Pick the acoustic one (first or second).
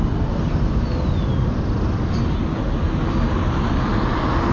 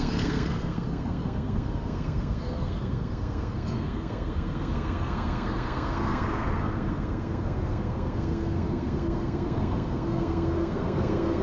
first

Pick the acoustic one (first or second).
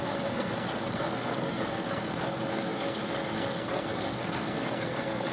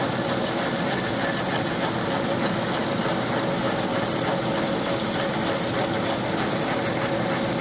second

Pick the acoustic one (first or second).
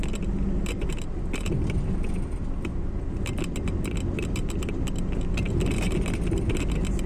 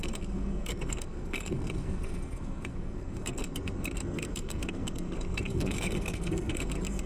first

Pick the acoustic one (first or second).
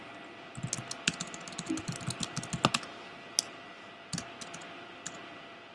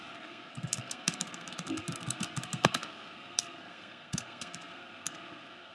first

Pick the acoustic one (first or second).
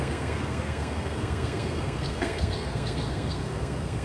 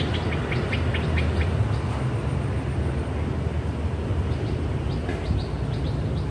second